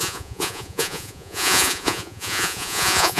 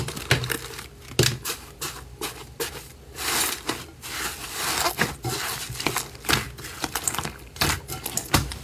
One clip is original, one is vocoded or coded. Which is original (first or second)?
second